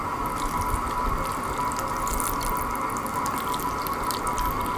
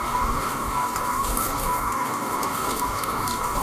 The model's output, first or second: second